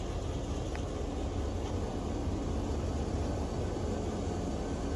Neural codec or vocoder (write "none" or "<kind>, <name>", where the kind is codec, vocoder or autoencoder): none